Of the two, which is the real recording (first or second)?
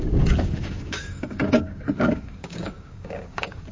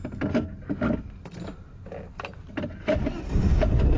second